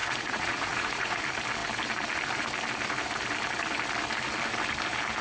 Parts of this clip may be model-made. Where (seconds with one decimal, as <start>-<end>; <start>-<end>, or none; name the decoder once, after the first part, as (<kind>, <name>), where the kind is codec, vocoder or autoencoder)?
0.0-1.2 (vocoder, Vocos)